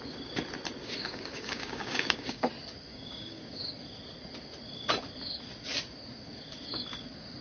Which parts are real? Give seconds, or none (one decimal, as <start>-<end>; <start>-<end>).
0.0-0.8; 2.5-2.9; 3.4-7.4